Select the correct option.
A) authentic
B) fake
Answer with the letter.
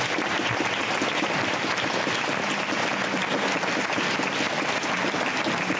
A